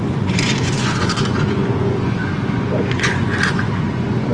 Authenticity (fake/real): fake